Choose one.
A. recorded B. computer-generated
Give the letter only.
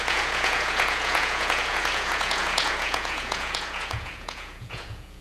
B